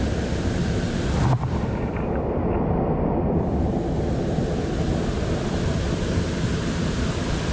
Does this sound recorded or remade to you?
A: recorded